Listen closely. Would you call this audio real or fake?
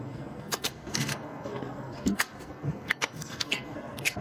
fake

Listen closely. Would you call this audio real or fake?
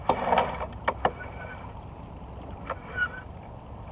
real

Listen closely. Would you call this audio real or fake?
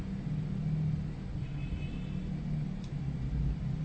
real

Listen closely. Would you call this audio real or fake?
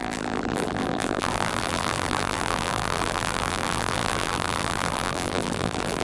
fake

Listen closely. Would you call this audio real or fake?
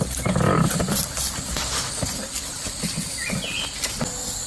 real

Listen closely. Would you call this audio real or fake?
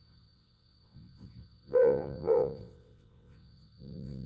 fake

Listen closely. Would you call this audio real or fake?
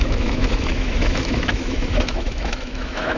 fake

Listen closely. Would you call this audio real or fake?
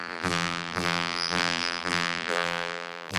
fake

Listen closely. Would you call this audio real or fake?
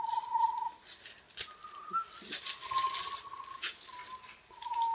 real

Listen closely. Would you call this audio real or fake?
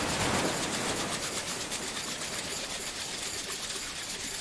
real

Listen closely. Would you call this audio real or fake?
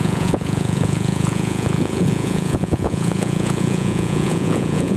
fake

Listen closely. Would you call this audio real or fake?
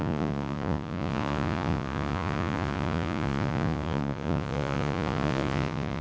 fake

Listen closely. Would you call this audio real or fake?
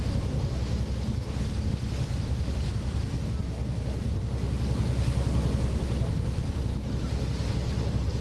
real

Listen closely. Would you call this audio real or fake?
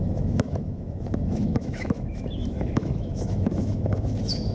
fake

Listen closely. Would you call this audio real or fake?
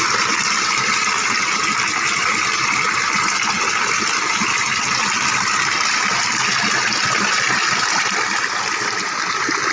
real